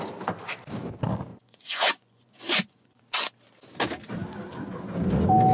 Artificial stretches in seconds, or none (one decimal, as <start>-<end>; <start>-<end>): 1.3-3.0

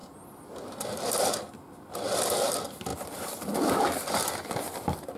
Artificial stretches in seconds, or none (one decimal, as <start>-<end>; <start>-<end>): none